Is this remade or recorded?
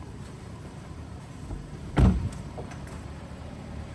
remade